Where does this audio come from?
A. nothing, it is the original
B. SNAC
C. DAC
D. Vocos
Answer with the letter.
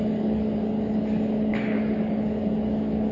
C